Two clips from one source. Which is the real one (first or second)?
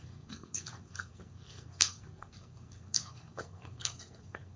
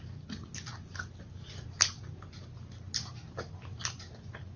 second